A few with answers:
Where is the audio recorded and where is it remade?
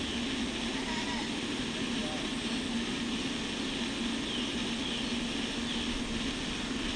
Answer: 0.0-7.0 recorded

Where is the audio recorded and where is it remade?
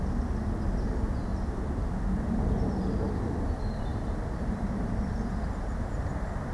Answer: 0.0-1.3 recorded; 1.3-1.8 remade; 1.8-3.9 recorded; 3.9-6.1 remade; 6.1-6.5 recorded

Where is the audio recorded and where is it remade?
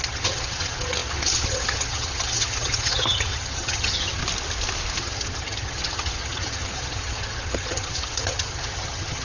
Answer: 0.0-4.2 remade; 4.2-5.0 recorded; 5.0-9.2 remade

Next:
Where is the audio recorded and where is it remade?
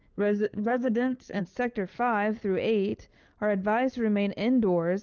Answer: 0.0-1.4 remade; 1.4-5.0 recorded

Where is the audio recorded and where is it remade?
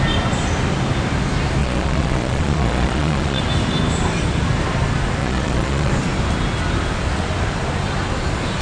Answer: 0.0-1.6 recorded; 1.6-3.4 remade; 3.4-5.2 recorded; 5.2-5.9 remade; 5.9-8.6 recorded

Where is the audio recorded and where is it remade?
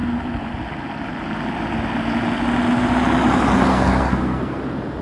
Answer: 0.0-3.7 recorded; 3.7-4.6 remade; 4.6-5.0 recorded